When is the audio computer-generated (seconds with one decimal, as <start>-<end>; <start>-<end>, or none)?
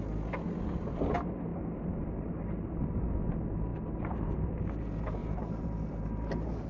1.5-3.0; 3.7-4.8; 5.2-6.7